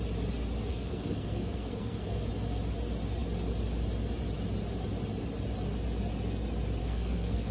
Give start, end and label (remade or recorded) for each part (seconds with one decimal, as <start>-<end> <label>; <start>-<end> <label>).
0.0-0.7 recorded; 0.7-2.3 remade; 2.3-6.8 recorded; 6.8-7.5 remade